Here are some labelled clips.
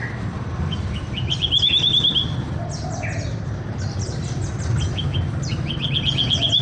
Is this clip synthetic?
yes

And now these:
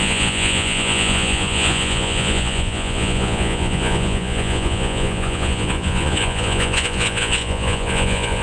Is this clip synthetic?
yes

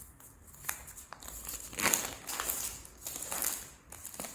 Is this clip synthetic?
no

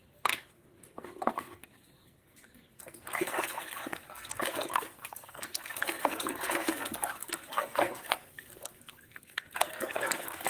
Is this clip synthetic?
yes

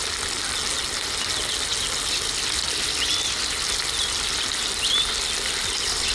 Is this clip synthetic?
no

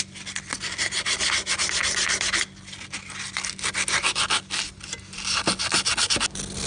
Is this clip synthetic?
no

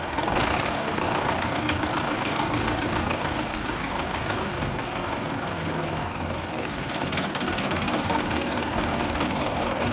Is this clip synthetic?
yes